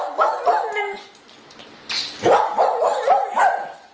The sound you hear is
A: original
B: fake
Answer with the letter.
A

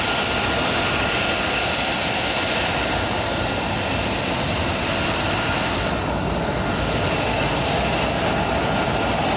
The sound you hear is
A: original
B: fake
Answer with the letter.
A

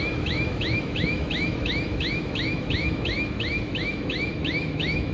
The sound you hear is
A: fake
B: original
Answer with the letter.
A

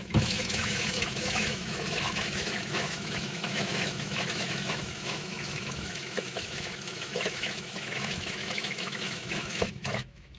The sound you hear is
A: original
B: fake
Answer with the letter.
B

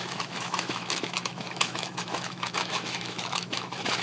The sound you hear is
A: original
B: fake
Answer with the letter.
B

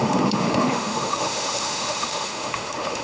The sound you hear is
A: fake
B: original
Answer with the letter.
A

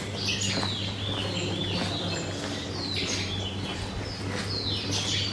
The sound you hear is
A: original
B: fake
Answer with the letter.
A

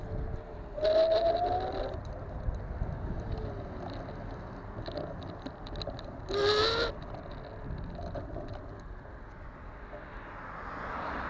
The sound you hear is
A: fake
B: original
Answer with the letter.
B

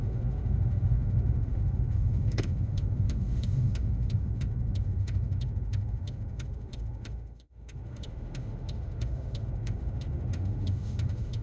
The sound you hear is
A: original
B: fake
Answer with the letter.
B